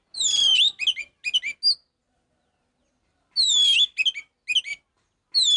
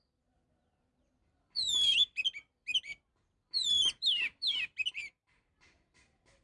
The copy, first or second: second